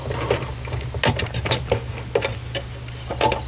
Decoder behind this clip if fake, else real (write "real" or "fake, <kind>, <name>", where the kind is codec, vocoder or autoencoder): real